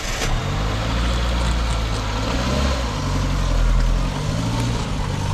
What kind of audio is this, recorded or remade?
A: recorded